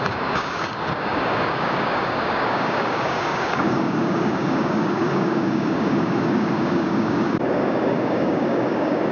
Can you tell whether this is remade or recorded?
remade